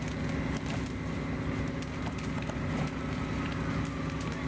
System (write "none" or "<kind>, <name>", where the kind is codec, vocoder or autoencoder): none